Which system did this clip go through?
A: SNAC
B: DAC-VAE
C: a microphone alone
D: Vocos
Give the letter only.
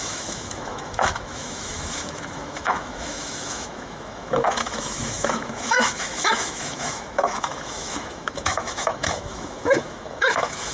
B